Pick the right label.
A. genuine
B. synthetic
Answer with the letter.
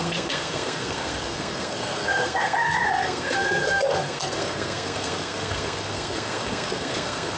B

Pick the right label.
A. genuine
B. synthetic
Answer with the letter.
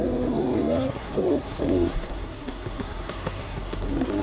B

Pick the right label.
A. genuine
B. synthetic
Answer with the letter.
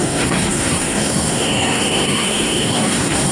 B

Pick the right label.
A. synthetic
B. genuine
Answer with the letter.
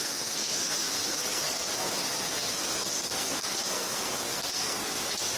A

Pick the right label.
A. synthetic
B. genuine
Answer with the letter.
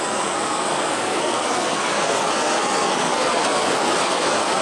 A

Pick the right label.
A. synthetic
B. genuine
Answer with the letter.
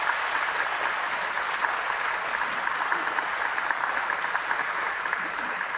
B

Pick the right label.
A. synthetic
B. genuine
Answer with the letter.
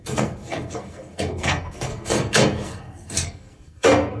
A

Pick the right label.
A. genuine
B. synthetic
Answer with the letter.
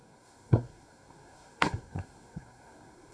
B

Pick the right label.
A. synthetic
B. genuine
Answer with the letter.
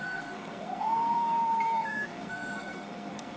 A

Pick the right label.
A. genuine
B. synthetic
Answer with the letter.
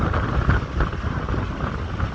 A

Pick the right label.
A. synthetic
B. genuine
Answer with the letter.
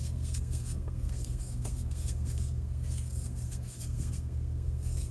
A